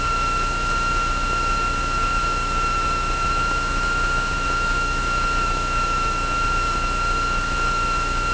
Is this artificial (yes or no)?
yes